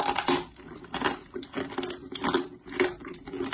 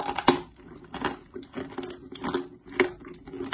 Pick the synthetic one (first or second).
first